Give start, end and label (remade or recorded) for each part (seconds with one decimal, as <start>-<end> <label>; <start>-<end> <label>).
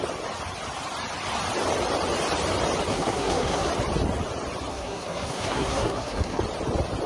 0.0-2.9 recorded; 2.9-3.7 remade; 3.7-4.7 recorded; 4.7-6.4 remade; 6.4-7.1 recorded